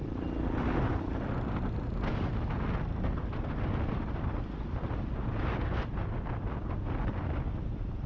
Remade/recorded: recorded